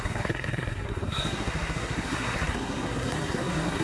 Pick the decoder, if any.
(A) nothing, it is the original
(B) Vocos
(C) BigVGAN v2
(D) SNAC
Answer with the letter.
D